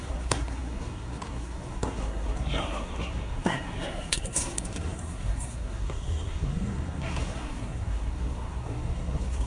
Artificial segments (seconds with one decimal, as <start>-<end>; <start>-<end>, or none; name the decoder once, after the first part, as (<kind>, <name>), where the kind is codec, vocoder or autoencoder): 0.0-9.5 (codec, SNAC)